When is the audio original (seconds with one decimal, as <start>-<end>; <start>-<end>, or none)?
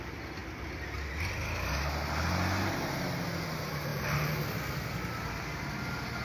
0.0-6.2